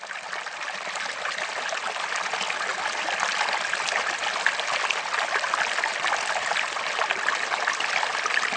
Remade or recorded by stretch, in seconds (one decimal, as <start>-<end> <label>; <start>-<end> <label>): 0.0-8.6 recorded